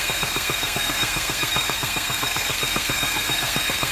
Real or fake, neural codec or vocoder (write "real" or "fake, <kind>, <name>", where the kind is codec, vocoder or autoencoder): fake, codec, SNAC